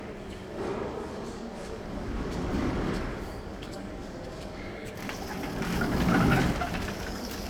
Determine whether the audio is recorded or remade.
remade